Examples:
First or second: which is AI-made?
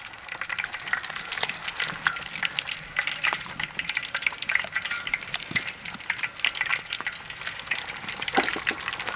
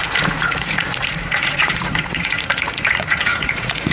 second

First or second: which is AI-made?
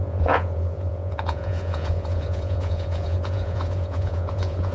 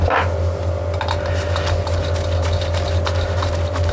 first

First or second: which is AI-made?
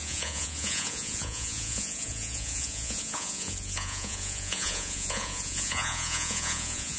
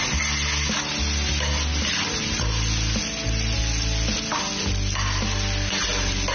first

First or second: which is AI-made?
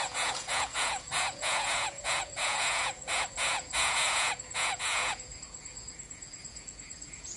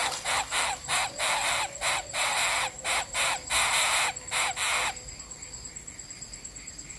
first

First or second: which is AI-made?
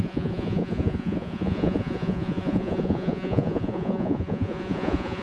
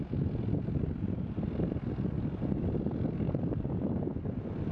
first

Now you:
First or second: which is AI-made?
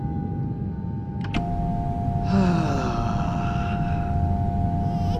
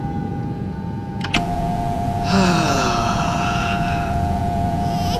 second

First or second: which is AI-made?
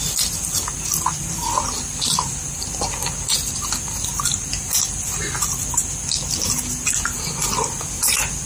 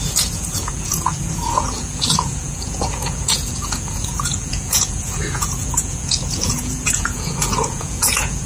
second